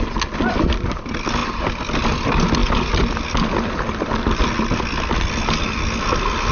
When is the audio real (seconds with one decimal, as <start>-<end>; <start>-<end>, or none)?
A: 0.0-6.5